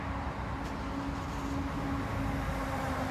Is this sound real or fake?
real